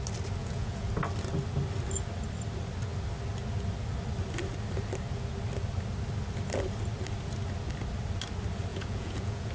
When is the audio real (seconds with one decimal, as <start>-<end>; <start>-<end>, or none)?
0.0-0.4; 0.9-8.7